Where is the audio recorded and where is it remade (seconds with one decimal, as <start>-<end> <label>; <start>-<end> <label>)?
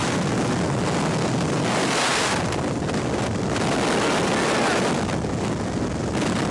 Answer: 0.0-6.5 recorded